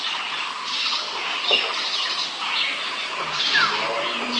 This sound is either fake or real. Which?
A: fake